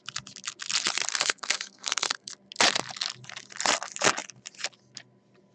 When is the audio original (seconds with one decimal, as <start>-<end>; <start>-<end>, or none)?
0.0-1.1; 2.3-5.5